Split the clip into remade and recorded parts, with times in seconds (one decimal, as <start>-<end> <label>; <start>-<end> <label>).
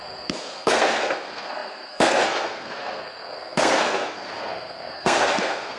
0.0-5.8 remade